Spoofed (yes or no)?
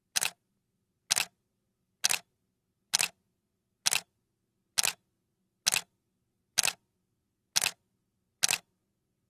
no